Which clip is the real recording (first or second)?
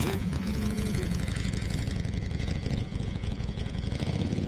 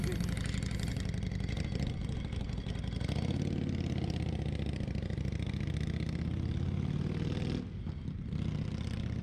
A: second